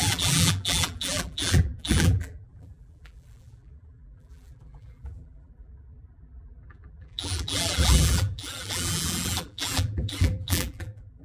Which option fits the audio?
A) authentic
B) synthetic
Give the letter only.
B